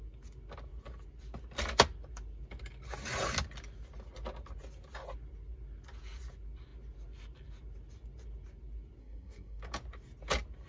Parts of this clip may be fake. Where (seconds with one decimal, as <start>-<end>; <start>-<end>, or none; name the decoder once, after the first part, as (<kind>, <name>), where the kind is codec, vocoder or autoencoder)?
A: 9.0-9.6 (codec, SNAC)